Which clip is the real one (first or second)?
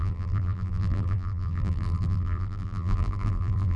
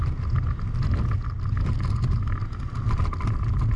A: second